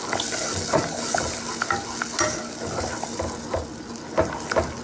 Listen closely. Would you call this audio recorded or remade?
recorded